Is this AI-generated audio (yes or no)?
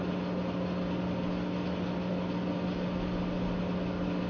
no